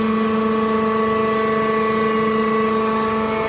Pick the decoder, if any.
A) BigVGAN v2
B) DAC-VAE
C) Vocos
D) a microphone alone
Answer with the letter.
D